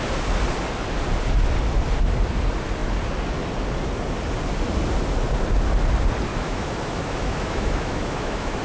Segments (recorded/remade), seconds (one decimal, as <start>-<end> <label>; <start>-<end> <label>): 0.0-6.3 recorded; 6.3-8.6 remade